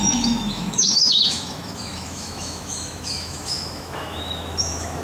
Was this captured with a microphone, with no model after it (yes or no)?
no